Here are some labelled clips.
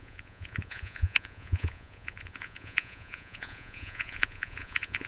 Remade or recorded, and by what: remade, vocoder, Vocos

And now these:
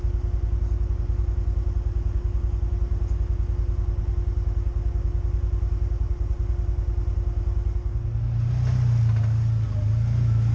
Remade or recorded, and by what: recorded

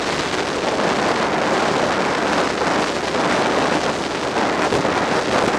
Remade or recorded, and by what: recorded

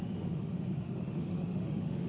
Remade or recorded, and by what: remade, autoencoder, DAC-VAE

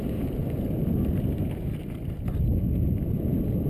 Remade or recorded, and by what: recorded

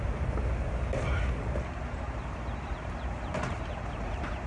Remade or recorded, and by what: recorded